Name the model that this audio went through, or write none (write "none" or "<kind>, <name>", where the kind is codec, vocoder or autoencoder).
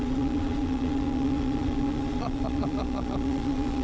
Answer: vocoder, Vocos